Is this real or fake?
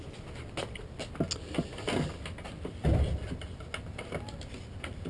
real